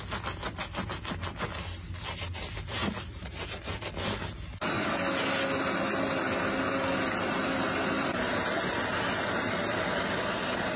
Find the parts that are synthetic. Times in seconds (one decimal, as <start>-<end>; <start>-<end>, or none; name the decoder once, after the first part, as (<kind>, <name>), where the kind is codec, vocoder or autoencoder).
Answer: none